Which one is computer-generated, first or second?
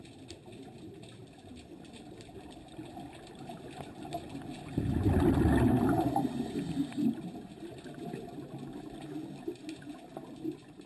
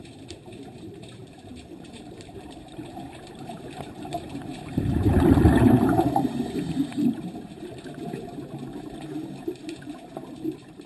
second